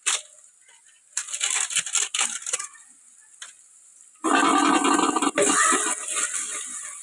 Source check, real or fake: real